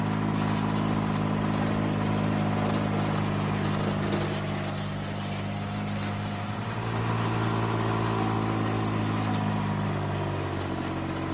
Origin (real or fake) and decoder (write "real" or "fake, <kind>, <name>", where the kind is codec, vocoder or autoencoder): real